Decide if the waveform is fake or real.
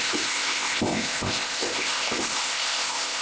fake